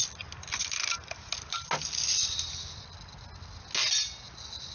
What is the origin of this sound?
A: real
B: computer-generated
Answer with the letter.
A